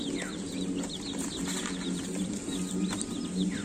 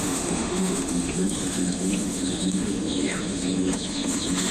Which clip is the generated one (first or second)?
second